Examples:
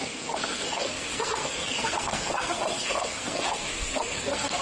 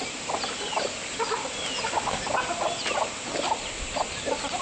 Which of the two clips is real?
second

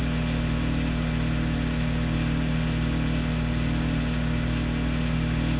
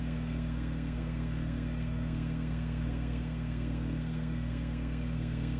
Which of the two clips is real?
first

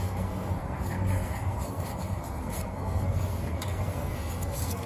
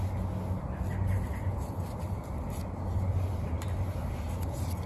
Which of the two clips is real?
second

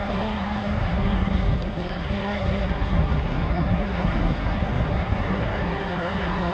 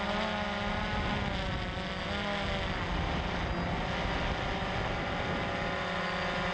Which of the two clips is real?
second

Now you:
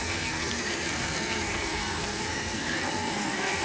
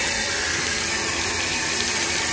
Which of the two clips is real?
second